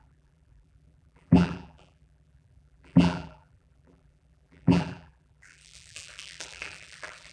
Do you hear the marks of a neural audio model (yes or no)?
yes